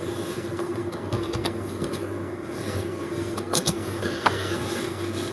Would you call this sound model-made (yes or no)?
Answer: yes